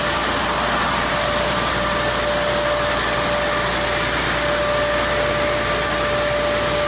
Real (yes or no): yes